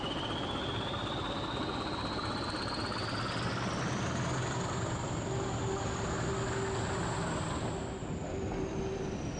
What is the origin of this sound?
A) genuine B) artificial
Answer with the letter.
A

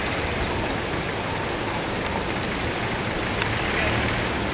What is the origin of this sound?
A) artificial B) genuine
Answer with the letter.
B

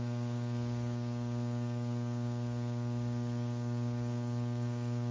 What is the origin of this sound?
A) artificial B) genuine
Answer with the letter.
A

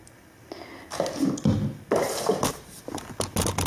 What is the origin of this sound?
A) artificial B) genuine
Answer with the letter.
B